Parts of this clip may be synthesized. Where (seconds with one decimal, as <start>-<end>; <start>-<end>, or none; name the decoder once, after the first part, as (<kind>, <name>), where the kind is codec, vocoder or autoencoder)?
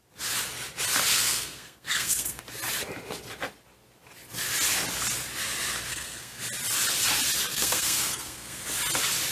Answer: 1.1-2.4 (codec, SNAC); 5.9-6.4; 7.5-8.6